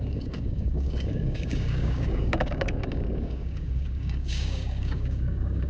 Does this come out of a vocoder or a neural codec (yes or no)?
yes